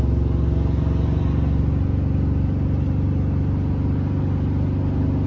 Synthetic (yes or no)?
no